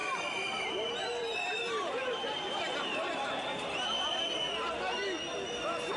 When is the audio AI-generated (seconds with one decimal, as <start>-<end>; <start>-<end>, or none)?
0.0-3.3